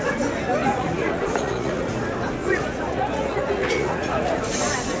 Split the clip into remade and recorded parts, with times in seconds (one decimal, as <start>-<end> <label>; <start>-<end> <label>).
0.0-0.6 recorded; 0.6-1.9 remade; 1.9-2.4 recorded; 2.4-4.4 remade; 4.4-5.0 recorded